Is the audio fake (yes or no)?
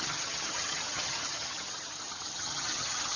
yes